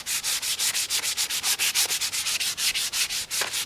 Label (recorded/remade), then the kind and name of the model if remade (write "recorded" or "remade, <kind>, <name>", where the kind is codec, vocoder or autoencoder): recorded